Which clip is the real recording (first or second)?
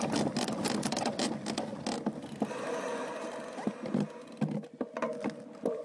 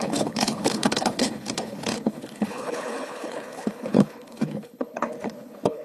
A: first